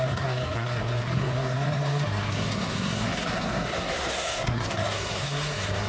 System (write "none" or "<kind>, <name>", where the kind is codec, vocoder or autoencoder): codec, SNAC